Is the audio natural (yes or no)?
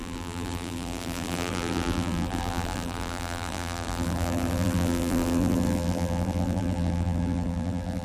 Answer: no